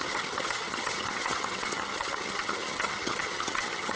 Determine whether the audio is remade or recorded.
remade